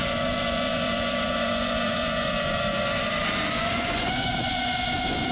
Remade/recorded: remade